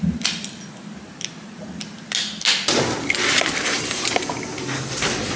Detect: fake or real real